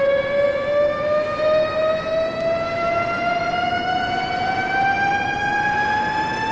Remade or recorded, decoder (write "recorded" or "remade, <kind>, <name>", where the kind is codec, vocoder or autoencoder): recorded